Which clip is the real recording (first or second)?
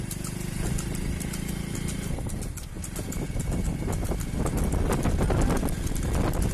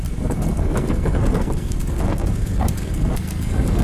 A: first